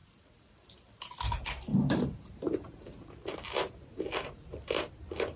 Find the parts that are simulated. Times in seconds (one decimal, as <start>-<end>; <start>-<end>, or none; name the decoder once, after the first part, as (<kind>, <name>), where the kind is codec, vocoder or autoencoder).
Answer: 0.0-1.1 (vocoder, BigVGAN v2); 1.7-4.9